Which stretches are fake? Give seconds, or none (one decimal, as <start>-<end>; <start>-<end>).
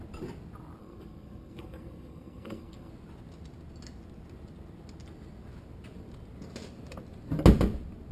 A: 0.8-2.9